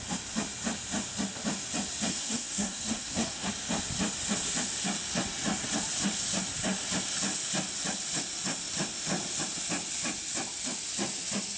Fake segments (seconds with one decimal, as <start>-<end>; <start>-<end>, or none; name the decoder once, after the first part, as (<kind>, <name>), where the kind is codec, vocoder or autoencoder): 2.1-3.5 (codec, SNAC)